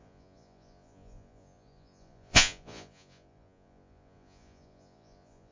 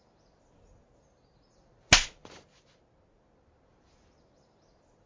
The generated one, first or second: first